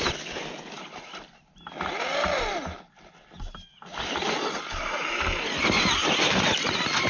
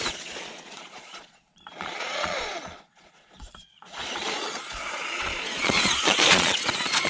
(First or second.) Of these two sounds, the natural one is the first